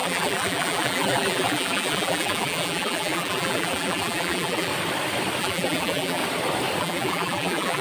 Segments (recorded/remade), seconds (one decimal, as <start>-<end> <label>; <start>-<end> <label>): 0.0-4.7 remade; 4.7-5.4 recorded; 5.4-6.2 remade; 6.2-6.8 recorded; 6.8-7.8 remade